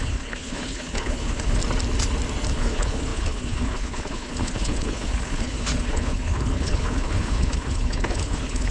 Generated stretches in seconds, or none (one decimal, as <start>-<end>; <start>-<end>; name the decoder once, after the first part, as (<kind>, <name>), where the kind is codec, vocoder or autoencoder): 0.0-1.6 (codec, HILCodec); 2.5-8.7